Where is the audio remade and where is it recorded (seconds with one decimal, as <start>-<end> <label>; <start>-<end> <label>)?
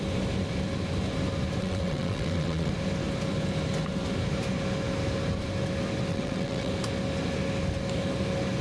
0.0-1.6 recorded; 1.6-2.7 remade; 2.7-6.1 recorded; 6.1-6.7 remade; 6.7-8.6 recorded